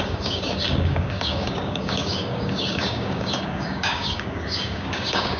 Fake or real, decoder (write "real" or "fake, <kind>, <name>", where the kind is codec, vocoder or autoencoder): fake, codec, DAC